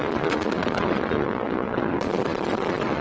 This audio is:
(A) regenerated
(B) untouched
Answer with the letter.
A